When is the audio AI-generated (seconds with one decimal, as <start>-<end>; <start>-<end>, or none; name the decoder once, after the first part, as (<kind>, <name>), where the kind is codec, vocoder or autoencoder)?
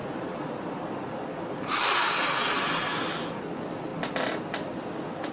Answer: none